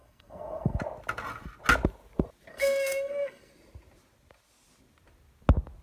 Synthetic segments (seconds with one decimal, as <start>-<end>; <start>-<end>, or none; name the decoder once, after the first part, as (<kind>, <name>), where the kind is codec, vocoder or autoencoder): 0.0-0.8 (codec, SNAC); 2.5-3.5